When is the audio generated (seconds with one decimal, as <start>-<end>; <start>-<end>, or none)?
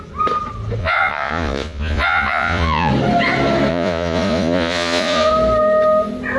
0.8-2.9; 3.7-5.3